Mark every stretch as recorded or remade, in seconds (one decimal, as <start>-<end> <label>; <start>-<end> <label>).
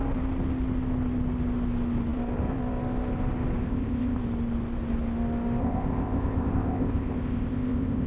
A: 0.0-3.6 recorded; 3.6-4.2 remade; 4.2-5.6 recorded; 5.6-8.1 remade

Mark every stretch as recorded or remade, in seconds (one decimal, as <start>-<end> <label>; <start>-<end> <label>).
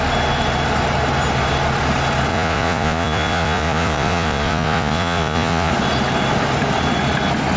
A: 0.0-2.3 recorded; 2.3-5.7 remade; 5.7-7.6 recorded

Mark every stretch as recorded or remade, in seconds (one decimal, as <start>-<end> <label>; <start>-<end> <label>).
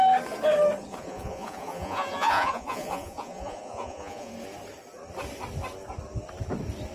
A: 0.0-0.9 recorded; 0.9-4.3 remade; 4.3-6.9 recorded